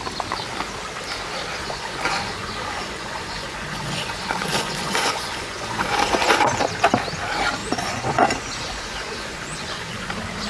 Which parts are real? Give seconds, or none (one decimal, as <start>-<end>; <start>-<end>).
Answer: 0.0-1.6; 6.6-7.6; 10.1-10.5